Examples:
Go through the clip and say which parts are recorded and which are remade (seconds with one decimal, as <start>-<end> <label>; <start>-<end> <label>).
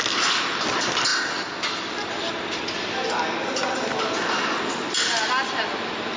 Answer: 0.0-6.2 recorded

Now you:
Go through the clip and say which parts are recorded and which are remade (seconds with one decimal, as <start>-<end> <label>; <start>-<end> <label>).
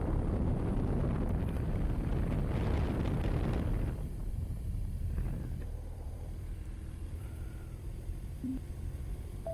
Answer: 0.0-2.1 remade; 2.1-4.3 recorded; 4.3-8.5 remade; 8.5-9.5 recorded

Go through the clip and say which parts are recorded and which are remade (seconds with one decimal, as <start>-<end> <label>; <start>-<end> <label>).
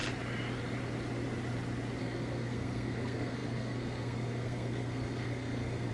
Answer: 0.0-2.0 recorded; 2.0-5.9 remade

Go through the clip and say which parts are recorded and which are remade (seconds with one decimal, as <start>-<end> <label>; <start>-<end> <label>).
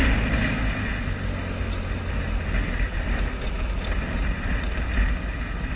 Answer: 0.0-5.8 recorded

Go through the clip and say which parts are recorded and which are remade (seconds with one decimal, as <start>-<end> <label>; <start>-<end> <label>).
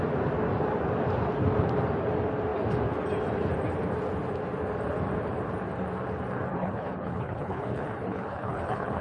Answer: 0.0-6.5 recorded; 6.5-9.0 remade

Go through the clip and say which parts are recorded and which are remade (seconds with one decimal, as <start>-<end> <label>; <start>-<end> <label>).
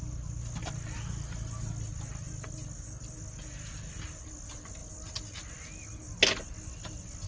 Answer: 0.0-7.3 recorded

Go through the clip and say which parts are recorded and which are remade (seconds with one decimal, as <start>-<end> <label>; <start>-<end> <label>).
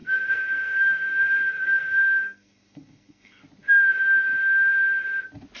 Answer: 0.0-3.4 remade; 3.4-5.6 recorded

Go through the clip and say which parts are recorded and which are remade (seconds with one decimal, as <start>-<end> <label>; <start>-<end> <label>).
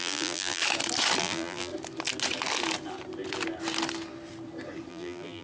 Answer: 0.0-0.6 remade; 0.6-1.2 recorded; 1.2-1.7 remade; 1.7-4.9 recorded; 4.9-5.4 remade